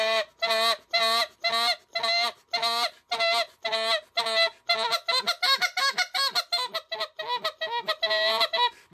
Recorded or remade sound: recorded